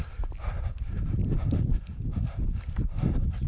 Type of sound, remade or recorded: recorded